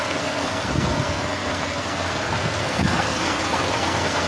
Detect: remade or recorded remade